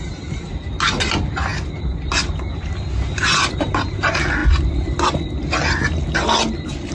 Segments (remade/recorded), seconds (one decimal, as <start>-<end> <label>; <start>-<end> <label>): 0.0-6.9 recorded